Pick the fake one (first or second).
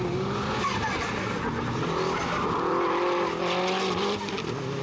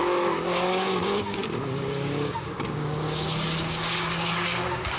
second